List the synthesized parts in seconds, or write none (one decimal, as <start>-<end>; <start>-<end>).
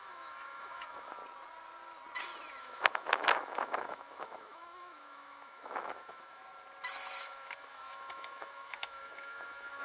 0.0-1.2; 2.6-6.4; 7.2-9.8